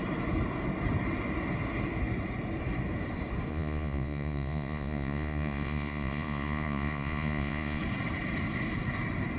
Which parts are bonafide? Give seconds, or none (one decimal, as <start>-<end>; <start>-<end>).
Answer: 0.0-3.5; 7.8-9.4